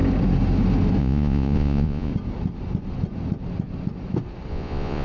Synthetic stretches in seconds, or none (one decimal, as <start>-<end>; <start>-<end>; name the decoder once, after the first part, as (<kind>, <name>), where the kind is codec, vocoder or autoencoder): 1.0-2.1 (vocoder, Vocos); 4.5-5.0

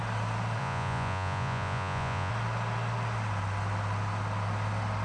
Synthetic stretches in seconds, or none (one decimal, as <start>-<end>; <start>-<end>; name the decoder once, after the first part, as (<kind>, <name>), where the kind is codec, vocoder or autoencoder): 0.6-2.3 (vocoder, Vocos)